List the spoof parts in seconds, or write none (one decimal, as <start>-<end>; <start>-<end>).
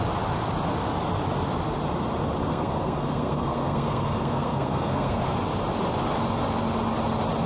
2.5-5.2